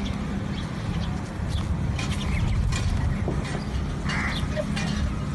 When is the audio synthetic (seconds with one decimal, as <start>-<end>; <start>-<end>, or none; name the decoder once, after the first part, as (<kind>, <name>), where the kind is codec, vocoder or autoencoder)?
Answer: none